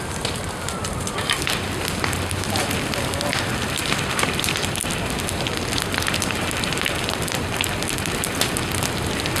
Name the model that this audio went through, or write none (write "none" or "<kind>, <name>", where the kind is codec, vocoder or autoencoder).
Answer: none